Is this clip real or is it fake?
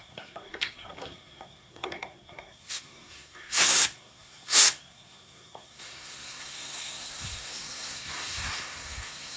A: fake